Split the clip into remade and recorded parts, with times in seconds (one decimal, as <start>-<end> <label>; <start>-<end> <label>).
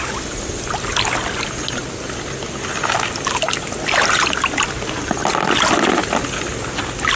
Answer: 0.0-7.2 recorded